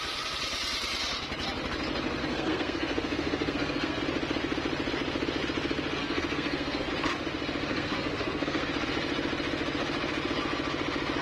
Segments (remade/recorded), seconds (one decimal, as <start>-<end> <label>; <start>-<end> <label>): 0.0-2.2 recorded; 2.2-4.0 remade; 4.0-6.0 recorded; 6.0-6.9 remade; 6.9-7.7 recorded; 7.7-8.7 remade; 8.7-11.2 recorded